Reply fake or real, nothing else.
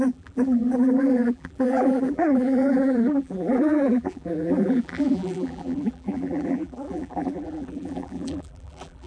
fake